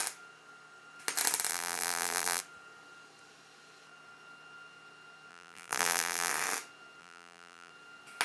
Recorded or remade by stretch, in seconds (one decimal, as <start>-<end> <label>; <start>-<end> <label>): 0.0-1.5 recorded; 1.5-2.4 remade; 2.4-5.3 recorded; 5.3-6.3 remade; 6.3-7.0 recorded; 7.0-7.7 remade; 7.7-8.2 recorded